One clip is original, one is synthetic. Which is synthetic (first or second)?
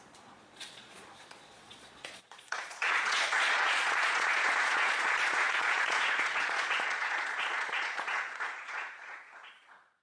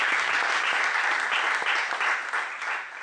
first